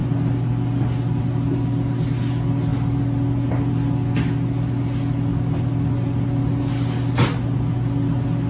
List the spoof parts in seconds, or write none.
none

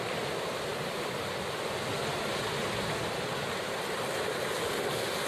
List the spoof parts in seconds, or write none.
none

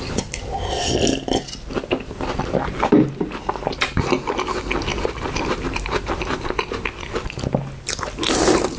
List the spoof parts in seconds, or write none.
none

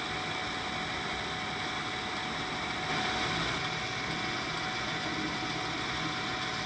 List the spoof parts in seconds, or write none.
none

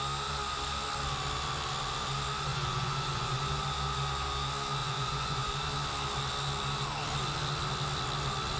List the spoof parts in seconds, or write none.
2.5-3.4 (vocoder, Vocos); 4.8-5.5

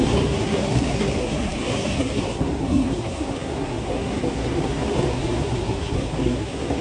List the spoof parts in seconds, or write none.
0.0-6.8 (codec, SNAC)